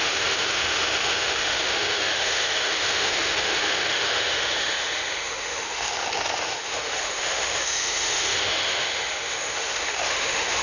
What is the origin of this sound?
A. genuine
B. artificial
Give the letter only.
B